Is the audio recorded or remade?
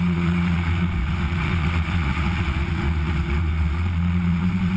remade